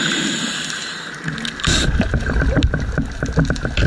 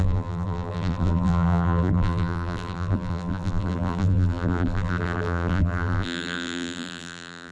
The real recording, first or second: first